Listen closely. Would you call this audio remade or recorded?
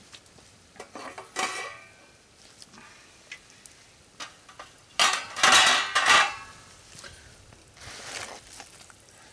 recorded